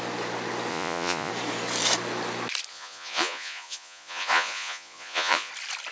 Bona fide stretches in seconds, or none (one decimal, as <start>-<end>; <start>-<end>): 0.0-0.7; 1.3-2.7; 5.5-5.9

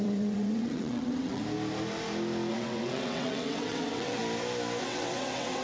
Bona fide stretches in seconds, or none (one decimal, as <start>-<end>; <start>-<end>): 1.4-2.5; 4.2-4.8

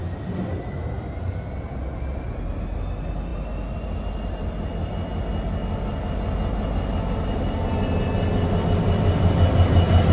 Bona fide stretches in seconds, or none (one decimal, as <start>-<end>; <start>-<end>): 0.0-10.1

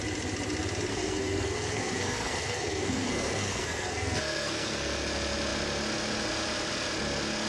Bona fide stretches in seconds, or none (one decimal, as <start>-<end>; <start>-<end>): 0.0-0.9; 4.9-7.5